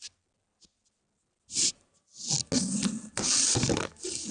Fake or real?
real